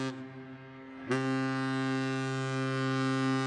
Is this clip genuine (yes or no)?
yes